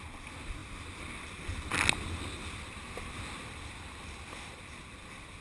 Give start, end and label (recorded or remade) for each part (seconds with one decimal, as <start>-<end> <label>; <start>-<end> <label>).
0.0-5.4 recorded